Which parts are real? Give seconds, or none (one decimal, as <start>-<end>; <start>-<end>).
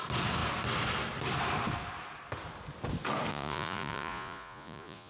0.0-3.3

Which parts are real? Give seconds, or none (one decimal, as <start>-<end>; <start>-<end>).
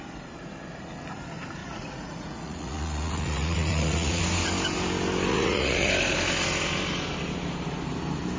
0.0-1.6; 4.2-5.3; 5.9-8.4